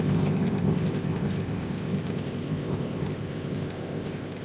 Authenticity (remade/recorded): remade